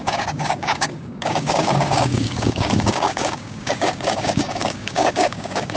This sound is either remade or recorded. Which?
remade